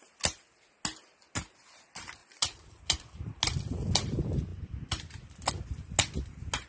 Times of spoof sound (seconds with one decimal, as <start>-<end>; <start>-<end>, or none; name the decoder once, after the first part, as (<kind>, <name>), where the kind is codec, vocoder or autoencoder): 2.2-2.8 (vocoder, Vocos)

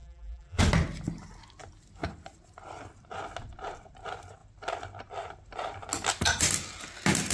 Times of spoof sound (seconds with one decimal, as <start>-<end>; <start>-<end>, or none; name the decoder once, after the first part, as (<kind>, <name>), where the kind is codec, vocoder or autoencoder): 0.0-0.6 (vocoder, BigVGAN v2)